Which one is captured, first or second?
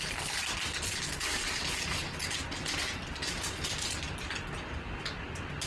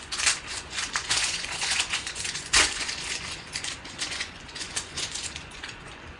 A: first